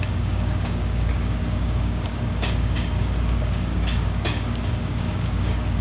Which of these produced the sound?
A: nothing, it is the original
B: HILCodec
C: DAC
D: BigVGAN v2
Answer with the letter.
C